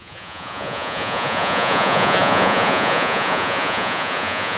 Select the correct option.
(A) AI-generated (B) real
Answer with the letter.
A